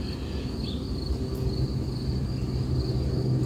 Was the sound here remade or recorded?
recorded